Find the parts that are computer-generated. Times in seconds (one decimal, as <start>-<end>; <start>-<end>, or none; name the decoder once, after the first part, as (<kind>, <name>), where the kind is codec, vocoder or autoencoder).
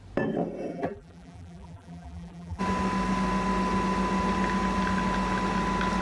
0.7-2.6 (vocoder, BigVGAN v2)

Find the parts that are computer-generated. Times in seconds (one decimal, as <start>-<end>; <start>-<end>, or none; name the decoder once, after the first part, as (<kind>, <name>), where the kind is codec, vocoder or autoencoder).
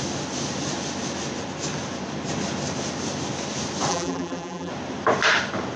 3.9-4.7 (vocoder, BigVGAN v2)